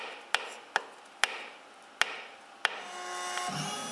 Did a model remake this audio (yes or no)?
no